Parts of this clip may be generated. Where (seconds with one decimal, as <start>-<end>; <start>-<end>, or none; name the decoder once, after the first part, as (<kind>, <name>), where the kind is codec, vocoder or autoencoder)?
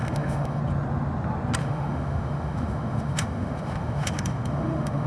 0.0-0.6 (autoencoder, DAC-VAE); 1.6-5.1